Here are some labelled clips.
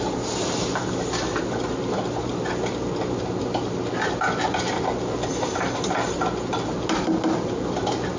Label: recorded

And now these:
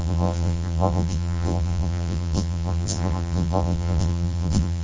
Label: remade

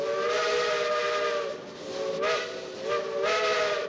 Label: recorded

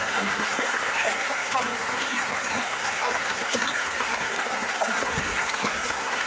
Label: remade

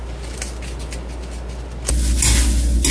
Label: recorded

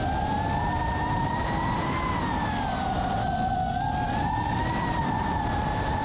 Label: recorded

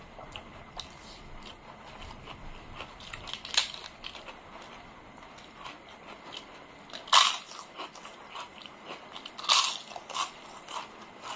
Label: recorded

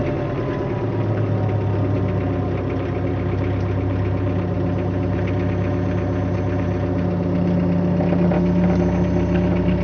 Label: recorded